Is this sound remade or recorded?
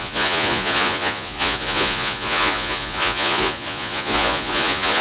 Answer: remade